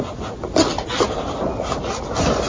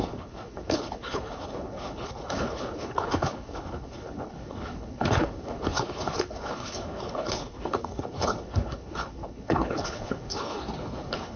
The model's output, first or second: second